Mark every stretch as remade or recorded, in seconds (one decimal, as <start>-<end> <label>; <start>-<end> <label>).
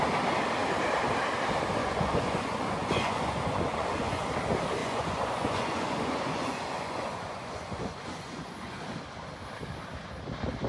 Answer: 0.0-1.8 recorded; 1.8-4.2 remade; 4.2-4.8 recorded; 4.8-8.8 remade; 8.8-10.7 recorded